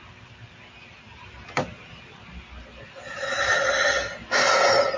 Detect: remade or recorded recorded